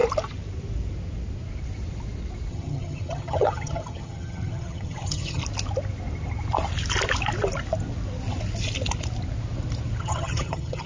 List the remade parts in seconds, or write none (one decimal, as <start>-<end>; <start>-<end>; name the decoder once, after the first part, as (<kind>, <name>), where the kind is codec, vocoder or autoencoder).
2.5-5.4 (vocoder, HiFi-GAN); 10.0-10.9